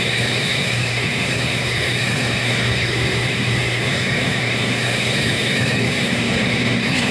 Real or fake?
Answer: fake